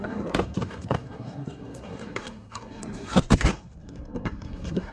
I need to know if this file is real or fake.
fake